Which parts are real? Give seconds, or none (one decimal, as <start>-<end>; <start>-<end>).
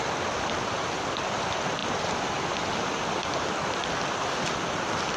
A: 0.0-5.2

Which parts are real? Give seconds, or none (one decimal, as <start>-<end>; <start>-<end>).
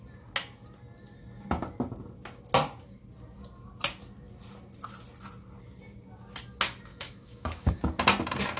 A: 0.0-6.9; 7.8-8.6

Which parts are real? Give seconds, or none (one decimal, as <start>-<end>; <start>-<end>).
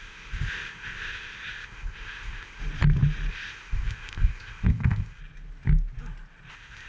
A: 2.6-3.3; 5.2-6.5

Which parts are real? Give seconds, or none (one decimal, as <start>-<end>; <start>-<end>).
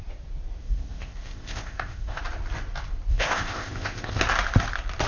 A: 0.0-0.6; 2.2-3.1; 4.2-5.1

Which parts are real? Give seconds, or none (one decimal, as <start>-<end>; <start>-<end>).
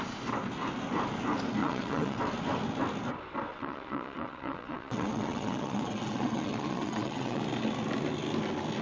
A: 0.0-1.6; 2.2-3.5; 7.4-8.8